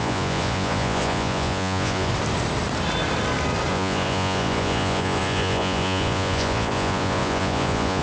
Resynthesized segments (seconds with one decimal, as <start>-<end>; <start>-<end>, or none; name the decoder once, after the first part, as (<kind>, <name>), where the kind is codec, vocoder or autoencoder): 0.0-2.1 (vocoder, Vocos); 3.7-8.0